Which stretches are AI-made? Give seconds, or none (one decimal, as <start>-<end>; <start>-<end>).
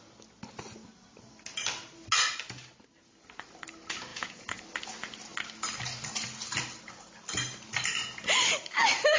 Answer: 4.1-4.6